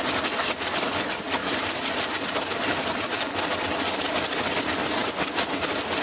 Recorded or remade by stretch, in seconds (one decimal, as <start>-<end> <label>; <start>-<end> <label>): 0.0-1.4 recorded; 1.4-3.4 remade; 3.4-6.0 recorded